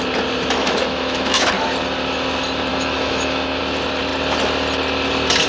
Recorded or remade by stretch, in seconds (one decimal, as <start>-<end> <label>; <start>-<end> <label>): 0.0-0.6 recorded; 0.6-1.5 remade; 1.5-2.7 recorded; 2.7-3.6 remade; 3.6-5.5 recorded